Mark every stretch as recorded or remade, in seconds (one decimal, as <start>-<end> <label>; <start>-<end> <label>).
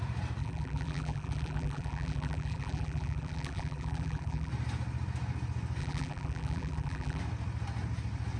0.0-0.4 recorded; 0.4-4.5 remade; 4.5-5.8 recorded; 5.8-7.2 remade; 7.2-8.4 recorded